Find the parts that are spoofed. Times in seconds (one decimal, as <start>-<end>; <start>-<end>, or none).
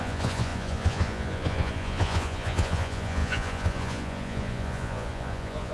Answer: 0.0-5.7